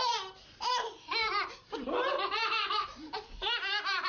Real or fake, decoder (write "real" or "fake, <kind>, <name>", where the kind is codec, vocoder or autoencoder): fake, vocoder, BigVGAN v2